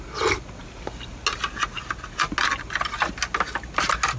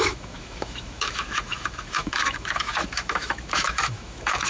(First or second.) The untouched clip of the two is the first